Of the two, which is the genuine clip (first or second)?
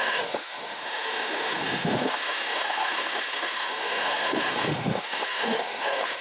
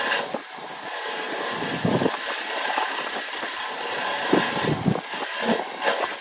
second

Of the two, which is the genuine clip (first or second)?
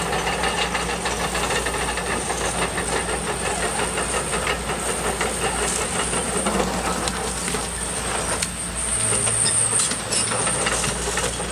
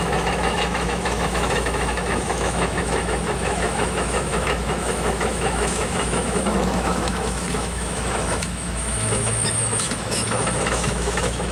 first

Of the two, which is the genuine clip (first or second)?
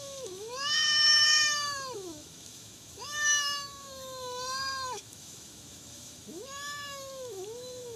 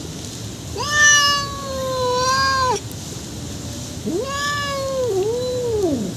second